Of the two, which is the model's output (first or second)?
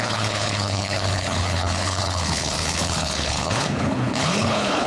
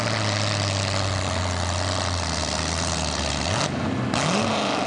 first